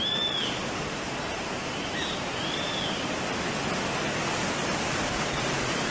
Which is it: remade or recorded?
recorded